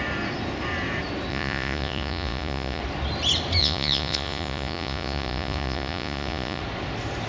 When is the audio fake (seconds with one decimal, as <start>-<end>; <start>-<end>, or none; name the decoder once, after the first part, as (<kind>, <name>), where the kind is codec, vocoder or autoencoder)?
1.3-2.8 (vocoder, Vocos); 3.6-6.6